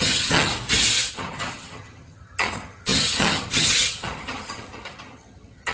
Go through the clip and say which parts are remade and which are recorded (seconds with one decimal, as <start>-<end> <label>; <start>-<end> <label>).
0.0-0.5 remade; 0.5-1.1 recorded; 1.1-5.7 remade